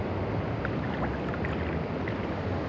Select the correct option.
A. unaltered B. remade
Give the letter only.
A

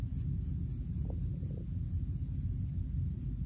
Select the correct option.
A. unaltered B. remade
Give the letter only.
A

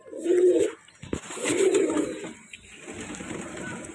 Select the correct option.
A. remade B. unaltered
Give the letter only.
B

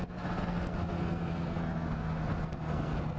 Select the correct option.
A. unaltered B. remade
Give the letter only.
B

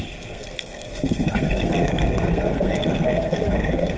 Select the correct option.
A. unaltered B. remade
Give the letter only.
B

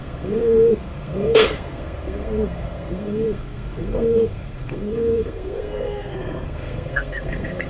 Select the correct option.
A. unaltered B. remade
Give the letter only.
B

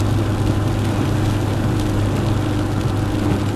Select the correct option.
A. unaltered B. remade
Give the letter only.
A